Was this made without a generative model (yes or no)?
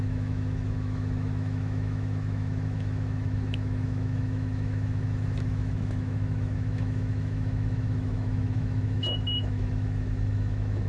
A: no